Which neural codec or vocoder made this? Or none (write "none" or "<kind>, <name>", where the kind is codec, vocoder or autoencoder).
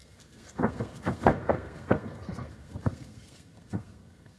codec, SNAC